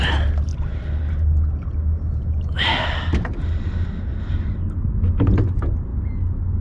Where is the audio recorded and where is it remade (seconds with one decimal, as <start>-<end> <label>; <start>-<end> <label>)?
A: 0.0-6.6 recorded